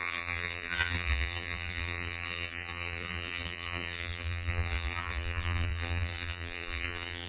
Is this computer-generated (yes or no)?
yes